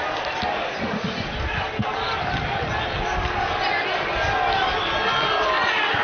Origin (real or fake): real